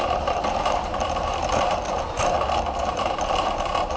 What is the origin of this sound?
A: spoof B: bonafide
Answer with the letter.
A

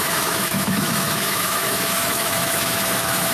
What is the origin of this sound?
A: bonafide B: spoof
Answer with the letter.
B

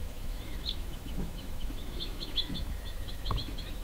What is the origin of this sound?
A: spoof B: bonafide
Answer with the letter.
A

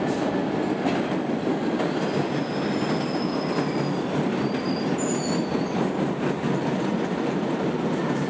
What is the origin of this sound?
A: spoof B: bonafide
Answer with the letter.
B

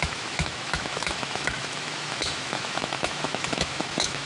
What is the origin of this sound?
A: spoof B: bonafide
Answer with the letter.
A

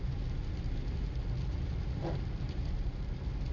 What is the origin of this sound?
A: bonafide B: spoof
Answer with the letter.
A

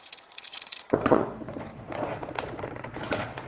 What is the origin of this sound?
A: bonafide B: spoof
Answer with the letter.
B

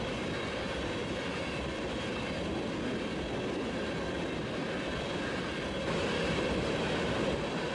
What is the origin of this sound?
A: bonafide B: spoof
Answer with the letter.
A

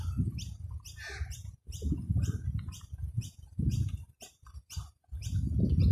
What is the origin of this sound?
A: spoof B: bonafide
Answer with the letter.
A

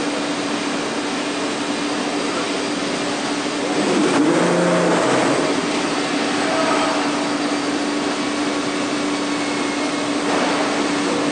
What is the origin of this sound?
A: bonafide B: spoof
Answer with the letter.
A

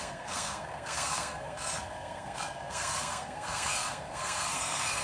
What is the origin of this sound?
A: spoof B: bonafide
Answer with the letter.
A